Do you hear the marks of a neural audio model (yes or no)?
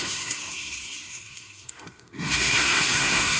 yes